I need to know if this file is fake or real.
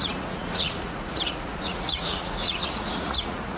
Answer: fake